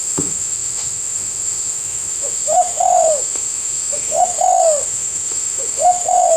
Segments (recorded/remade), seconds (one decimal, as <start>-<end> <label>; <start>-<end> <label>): 0.0-6.4 remade